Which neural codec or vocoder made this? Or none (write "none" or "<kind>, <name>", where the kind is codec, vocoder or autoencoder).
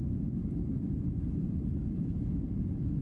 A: none